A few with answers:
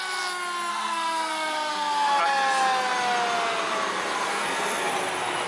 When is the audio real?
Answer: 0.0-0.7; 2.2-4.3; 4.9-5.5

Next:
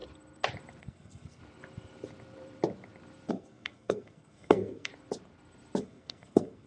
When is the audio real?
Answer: 0.0-0.8; 1.4-3.3; 4.9-5.8